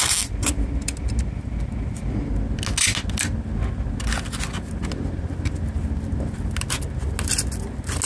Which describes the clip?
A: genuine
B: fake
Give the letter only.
A